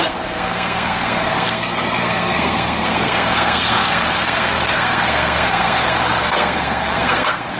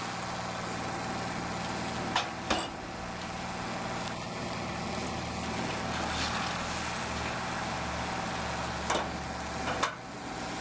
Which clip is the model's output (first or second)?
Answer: first